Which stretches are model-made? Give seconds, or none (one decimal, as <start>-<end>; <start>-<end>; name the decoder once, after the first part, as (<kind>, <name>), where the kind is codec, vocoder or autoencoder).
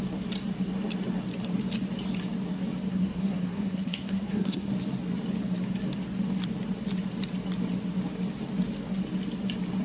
2.9-4.7 (codec, SNAC)